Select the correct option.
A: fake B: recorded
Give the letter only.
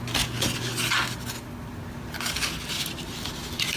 B